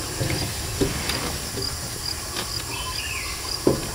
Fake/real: real